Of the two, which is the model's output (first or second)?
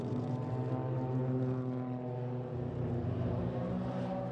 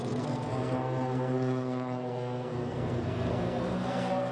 second